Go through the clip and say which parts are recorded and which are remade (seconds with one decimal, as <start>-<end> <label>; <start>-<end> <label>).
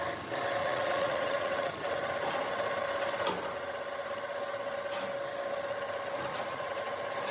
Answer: 0.0-0.6 recorded; 0.6-1.7 remade; 1.7-6.3 recorded; 6.3-6.8 remade; 6.8-7.3 recorded